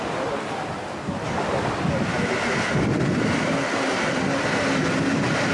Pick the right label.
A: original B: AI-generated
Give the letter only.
A